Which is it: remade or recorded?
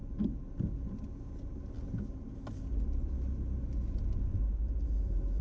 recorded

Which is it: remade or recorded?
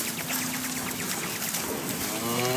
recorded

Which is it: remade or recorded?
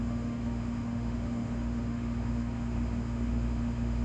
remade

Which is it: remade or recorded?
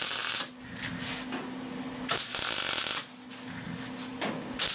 recorded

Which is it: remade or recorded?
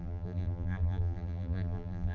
remade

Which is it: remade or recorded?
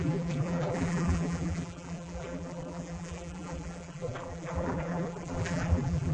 remade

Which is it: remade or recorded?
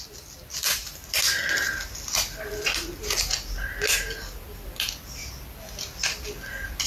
recorded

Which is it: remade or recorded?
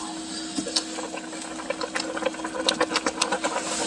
recorded